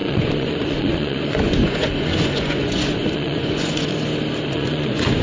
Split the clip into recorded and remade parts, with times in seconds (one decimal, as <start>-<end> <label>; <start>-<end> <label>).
0.0-3.9 remade; 3.9-4.5 recorded; 4.5-5.2 remade